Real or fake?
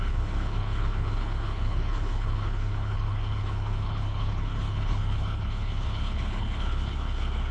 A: fake